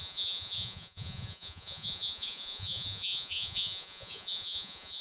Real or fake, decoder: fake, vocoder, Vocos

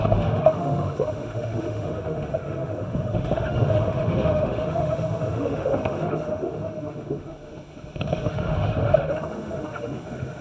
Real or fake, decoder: fake, autoencoder, DAC-VAE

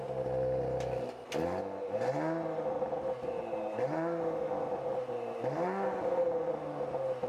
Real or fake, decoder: real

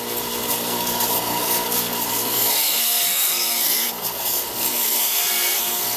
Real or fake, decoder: fake, codec, SNAC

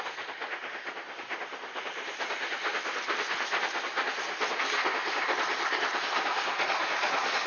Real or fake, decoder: real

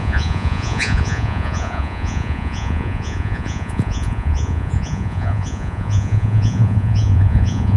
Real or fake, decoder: fake, vocoder, Vocos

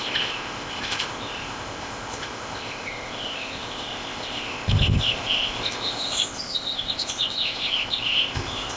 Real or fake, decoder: fake, codec, ZipCodec